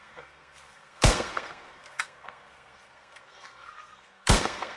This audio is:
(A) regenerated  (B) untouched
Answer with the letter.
A